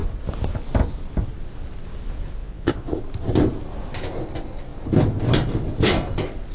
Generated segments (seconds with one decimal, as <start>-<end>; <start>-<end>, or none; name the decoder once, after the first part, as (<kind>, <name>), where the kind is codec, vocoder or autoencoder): 2.4-3.0 (vocoder, Vocos)